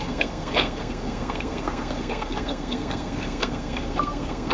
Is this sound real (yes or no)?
no